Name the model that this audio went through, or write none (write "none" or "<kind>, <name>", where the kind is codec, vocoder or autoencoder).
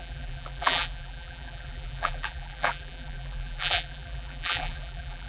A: vocoder, BigVGAN v2